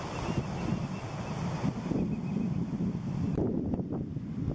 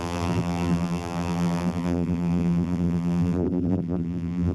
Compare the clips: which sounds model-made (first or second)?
second